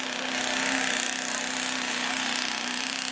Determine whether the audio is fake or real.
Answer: real